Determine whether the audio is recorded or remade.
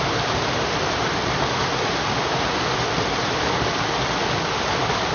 recorded